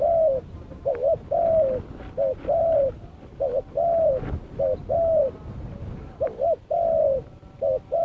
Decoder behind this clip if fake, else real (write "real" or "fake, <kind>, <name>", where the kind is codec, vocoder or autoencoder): real